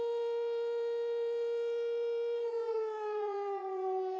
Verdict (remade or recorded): remade